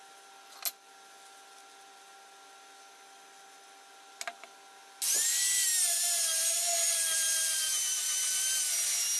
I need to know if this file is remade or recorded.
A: recorded